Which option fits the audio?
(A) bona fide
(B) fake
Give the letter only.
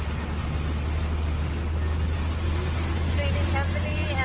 A